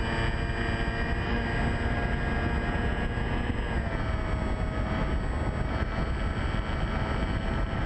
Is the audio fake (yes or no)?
no